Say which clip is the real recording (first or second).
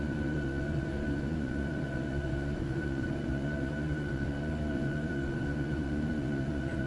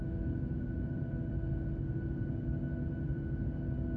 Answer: second